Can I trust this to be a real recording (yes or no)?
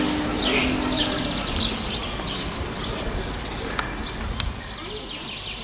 yes